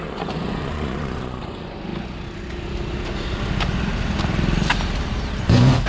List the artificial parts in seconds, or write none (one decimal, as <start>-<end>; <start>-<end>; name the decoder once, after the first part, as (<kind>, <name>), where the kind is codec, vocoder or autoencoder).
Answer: 0.0-1.9 (vocoder, Vocos); 5.4-5.9